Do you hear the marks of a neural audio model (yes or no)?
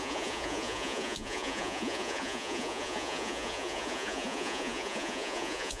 yes